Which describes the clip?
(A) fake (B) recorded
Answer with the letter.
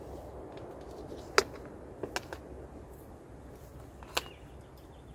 B